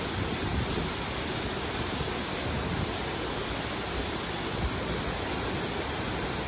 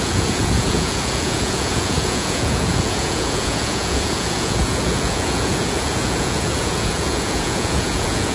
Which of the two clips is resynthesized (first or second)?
second